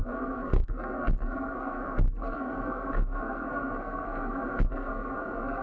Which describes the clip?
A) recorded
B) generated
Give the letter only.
B